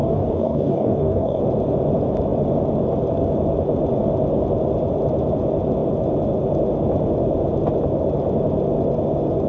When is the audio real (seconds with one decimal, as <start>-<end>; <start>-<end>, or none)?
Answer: 1.4-9.5